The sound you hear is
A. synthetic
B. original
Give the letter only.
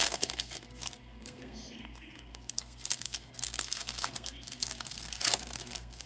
A